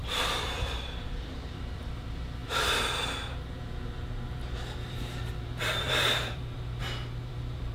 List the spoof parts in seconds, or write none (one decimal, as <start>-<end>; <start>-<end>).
0.8-6.8; 7.3-7.7